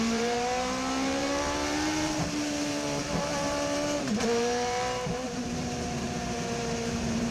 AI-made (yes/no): yes